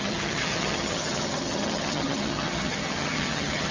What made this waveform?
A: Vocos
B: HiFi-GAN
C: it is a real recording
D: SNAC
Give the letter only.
B